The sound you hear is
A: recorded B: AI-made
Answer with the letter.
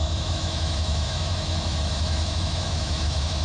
B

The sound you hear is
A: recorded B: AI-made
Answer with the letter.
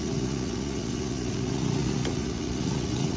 B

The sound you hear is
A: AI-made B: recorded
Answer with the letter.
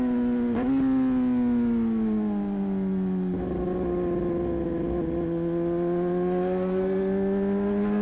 B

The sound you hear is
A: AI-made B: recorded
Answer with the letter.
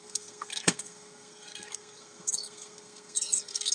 A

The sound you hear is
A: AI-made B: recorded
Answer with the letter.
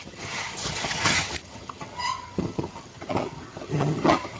A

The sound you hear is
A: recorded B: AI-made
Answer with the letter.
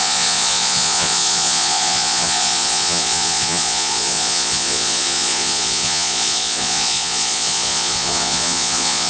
B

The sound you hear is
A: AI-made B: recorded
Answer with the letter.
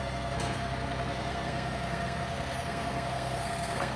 A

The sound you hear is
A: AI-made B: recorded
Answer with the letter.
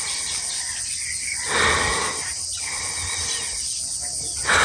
B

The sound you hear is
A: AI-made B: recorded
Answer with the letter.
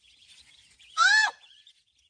B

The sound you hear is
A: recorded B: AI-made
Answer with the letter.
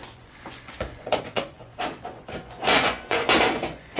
B